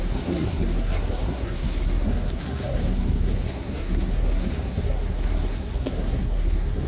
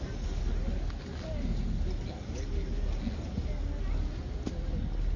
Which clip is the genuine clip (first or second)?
second